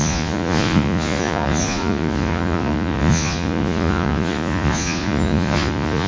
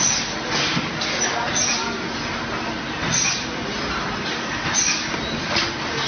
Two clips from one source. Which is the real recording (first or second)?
second